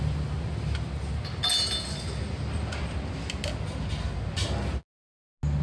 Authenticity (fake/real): real